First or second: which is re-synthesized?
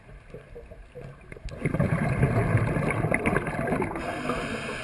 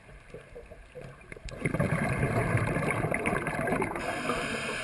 second